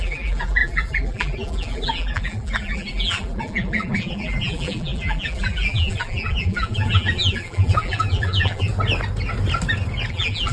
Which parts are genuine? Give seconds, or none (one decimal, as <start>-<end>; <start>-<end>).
8.7-10.1